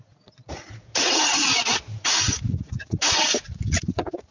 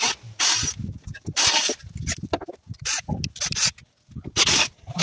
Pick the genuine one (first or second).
second